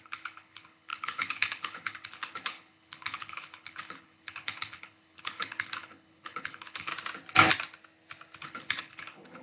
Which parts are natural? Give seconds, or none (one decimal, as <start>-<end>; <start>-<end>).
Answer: 6.9-8.4